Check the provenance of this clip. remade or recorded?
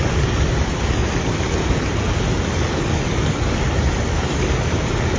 recorded